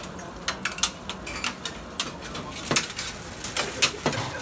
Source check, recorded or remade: recorded